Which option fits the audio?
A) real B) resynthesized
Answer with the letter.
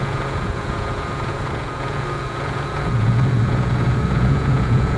B